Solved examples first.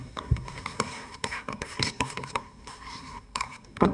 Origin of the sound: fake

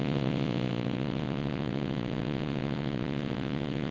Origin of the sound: fake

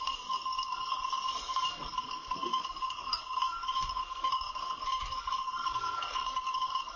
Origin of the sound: fake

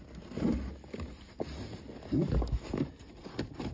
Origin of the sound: real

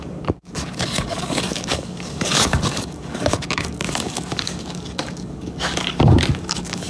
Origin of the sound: fake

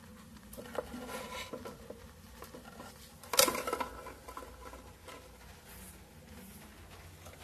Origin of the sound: real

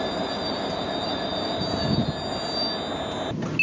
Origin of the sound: real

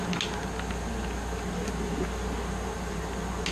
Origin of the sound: real